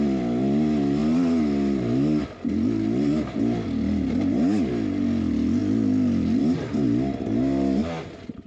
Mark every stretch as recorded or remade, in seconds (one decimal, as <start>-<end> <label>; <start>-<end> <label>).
0.0-8.5 recorded